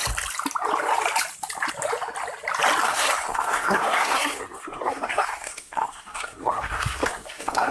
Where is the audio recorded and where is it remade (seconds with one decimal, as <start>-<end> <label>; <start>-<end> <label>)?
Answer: 0.0-2.8 recorded; 2.8-7.7 remade